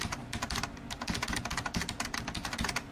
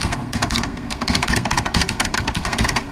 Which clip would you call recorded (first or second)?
first